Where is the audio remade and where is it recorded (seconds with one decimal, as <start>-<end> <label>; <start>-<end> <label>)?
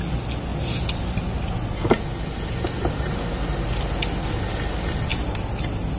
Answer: 0.0-6.0 recorded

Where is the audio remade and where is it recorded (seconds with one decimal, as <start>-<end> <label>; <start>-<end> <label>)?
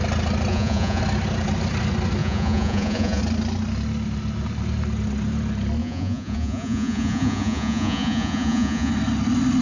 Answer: 0.0-0.5 recorded; 0.5-1.0 remade; 1.0-2.2 recorded; 2.2-3.2 remade; 3.2-5.8 recorded; 5.8-8.9 remade; 8.9-9.6 recorded